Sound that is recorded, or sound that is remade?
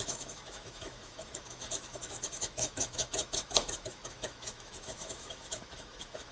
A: remade